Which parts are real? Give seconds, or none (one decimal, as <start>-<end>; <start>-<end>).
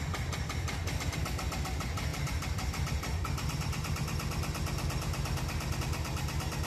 0.0-6.7